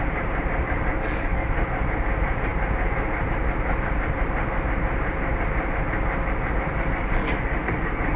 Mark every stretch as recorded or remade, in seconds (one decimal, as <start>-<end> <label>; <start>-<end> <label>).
0.0-0.9 recorded; 0.9-1.5 remade; 1.5-7.2 recorded; 7.2-8.2 remade